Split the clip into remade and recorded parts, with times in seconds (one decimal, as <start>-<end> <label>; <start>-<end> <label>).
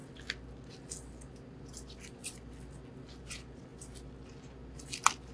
0.0-5.3 recorded